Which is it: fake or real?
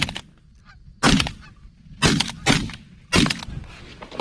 real